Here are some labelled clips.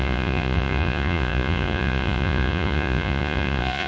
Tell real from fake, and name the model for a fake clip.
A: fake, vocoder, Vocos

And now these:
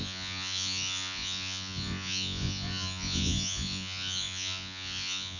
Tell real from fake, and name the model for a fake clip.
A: fake, vocoder, Vocos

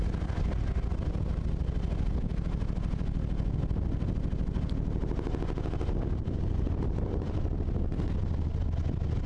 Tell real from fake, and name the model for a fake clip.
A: real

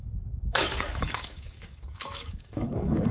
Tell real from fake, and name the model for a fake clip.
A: fake, codec, DAC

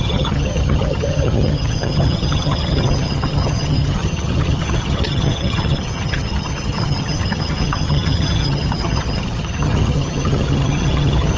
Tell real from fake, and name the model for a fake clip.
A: fake, vocoder, HiFi-GAN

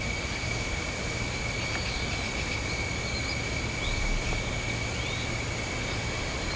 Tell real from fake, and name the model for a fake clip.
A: real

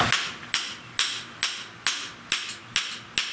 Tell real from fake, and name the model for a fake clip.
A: real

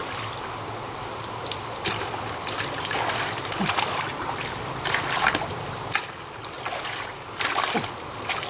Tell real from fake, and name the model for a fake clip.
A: real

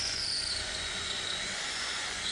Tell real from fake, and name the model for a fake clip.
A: fake, vocoder, Vocos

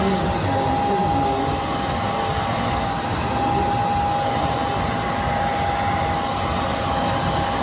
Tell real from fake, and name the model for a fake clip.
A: real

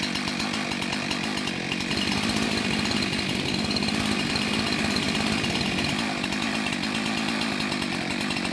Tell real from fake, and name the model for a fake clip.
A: real